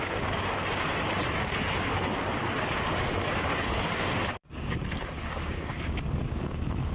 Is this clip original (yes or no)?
no